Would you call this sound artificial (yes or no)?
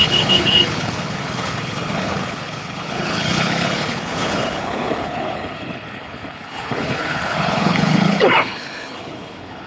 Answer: yes